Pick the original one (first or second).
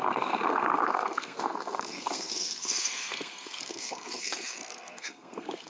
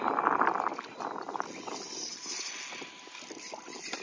second